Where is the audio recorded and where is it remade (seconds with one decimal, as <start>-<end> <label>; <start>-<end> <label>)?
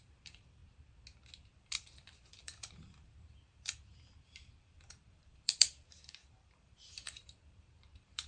0.0-0.6 remade; 0.6-1.6 recorded; 1.6-8.3 remade